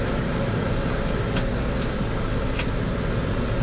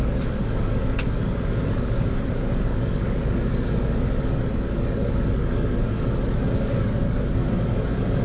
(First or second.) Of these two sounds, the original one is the first